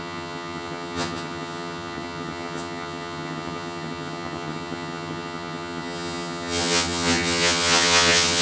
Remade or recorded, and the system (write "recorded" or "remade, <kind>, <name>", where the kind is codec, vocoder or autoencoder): remade, vocoder, HiFi-GAN